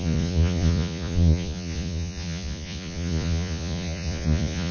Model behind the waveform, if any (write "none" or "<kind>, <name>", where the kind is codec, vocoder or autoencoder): vocoder, Vocos